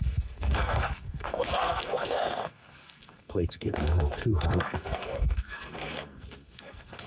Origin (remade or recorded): remade